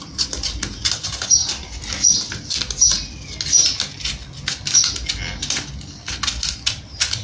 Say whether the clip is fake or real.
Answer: real